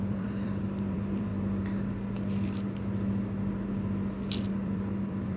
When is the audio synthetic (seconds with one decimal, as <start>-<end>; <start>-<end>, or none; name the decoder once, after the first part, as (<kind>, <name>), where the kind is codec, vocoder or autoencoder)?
0.0-1.3 (vocoder, BigVGAN v2); 4.5-5.4